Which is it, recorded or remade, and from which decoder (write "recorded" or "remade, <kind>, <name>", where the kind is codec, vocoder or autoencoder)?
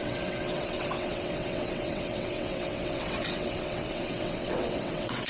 remade, vocoder, WaveNeXt